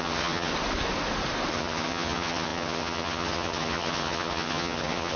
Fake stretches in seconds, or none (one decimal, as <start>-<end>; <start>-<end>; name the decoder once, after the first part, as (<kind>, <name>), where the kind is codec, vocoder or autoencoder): 0.0-0.5 (vocoder, HiFi-GAN); 1.5-5.2